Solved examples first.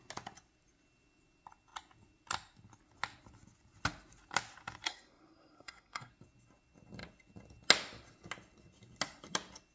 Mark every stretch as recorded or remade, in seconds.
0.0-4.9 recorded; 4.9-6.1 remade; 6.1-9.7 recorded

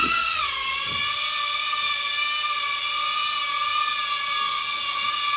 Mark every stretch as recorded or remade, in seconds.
0.0-0.9 remade; 0.9-5.4 recorded

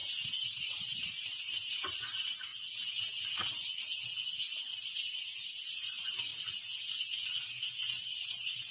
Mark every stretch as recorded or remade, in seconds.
0.0-2.5 remade; 2.5-4.5 recorded; 4.5-6.3 remade; 6.3-7.4 recorded; 7.4-8.7 remade

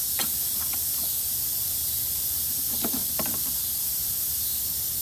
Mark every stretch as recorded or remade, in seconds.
0.0-1.5 recorded; 1.5-2.4 remade; 2.4-3.0 recorded; 3.0-3.7 remade; 3.7-5.0 recorded

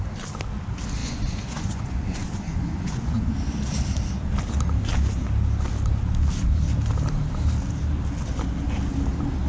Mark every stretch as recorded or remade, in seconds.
0.0-1.0 recorded; 1.0-3.3 remade; 3.3-9.5 recorded

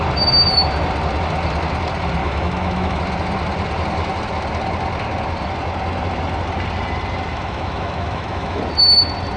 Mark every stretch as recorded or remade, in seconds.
0.0-2.2 recorded; 2.2-3.0 remade; 3.0-7.3 recorded; 7.3-8.6 remade; 8.6-9.4 recorded

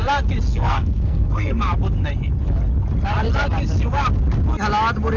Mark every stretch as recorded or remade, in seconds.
0.0-0.5 recorded; 0.5-1.6 remade; 1.6-5.2 recorded